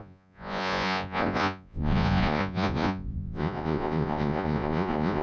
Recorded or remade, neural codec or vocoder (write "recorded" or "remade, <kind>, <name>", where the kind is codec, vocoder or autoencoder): remade, vocoder, Vocos